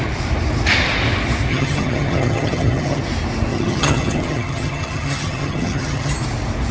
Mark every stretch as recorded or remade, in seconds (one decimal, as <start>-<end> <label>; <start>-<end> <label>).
0.0-1.5 recorded; 1.5-3.0 remade; 3.0-3.5 recorded; 3.5-6.1 remade; 6.1-6.7 recorded